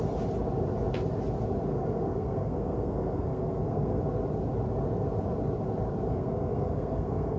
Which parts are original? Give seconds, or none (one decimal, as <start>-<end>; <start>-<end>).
0.0-1.7; 4.0-6.1